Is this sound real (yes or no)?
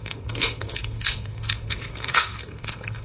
no